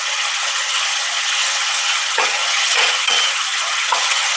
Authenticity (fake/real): fake